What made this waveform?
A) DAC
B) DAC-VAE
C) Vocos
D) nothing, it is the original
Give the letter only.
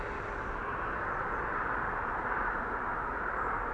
D